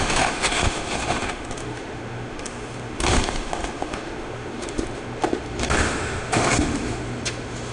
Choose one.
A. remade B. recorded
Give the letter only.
A